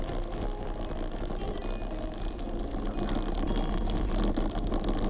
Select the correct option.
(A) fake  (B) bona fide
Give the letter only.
B